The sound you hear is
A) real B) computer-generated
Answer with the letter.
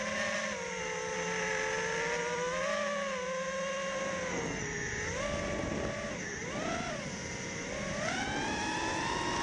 A